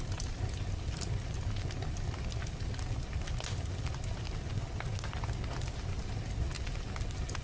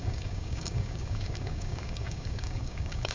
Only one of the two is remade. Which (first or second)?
second